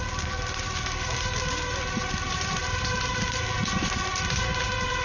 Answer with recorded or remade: recorded